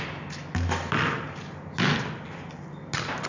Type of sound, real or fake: real